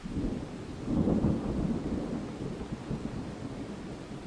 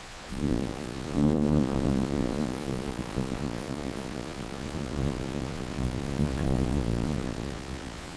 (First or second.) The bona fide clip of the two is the first